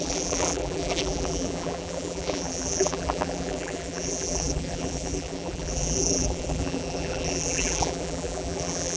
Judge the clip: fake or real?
fake